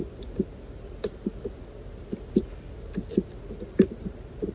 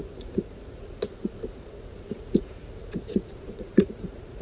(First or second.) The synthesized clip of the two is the second